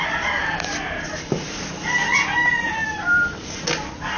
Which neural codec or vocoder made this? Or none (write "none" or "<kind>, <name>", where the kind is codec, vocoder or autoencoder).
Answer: none